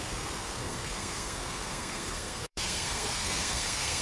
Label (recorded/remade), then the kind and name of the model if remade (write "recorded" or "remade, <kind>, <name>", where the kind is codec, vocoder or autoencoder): remade, codec, SNAC